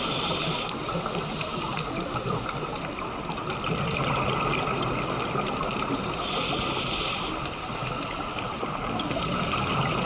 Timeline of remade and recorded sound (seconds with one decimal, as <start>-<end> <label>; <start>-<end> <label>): 0.0-10.1 recorded